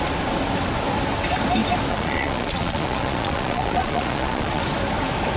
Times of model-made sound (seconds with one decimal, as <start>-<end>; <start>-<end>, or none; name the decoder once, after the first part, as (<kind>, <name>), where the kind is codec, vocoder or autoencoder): 1.9-4.6 (vocoder, Vocos)